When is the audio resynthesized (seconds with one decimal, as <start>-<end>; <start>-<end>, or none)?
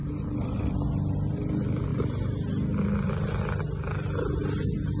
none